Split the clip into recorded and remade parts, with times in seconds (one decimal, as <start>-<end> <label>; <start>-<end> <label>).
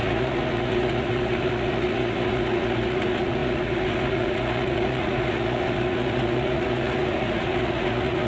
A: 0.0-8.3 remade